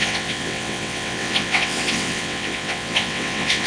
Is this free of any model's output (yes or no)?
no